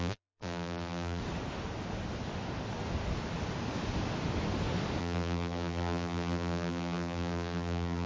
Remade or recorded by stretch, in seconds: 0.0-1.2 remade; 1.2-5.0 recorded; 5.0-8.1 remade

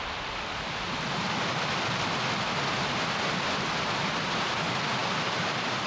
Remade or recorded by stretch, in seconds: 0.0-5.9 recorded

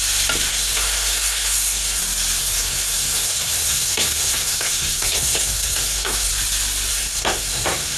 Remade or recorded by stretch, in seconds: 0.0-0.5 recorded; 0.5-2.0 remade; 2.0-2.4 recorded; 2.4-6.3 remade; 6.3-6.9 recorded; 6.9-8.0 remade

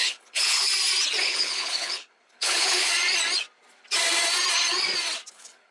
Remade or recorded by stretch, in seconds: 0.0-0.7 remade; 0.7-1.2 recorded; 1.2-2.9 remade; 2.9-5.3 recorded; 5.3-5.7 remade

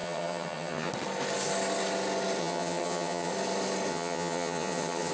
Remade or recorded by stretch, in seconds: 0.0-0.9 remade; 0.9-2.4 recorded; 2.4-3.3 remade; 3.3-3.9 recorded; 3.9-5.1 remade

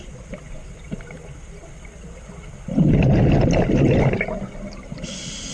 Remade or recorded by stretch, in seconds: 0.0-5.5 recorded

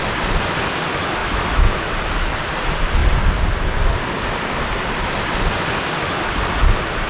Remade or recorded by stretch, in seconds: 0.0-1.2 recorded; 1.2-2.0 remade; 2.0-7.1 recorded

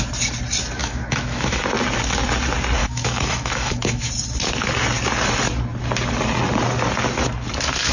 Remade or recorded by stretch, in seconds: 0.0-0.8 recorded; 0.8-1.6 remade; 1.6-2.8 recorded; 2.8-4.0 remade; 4.0-7.9 recorded